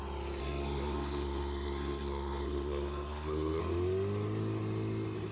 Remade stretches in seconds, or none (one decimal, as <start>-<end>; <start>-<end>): 0.4-3.6